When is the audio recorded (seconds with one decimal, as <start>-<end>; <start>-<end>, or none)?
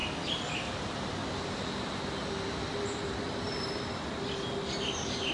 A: 0.0-5.3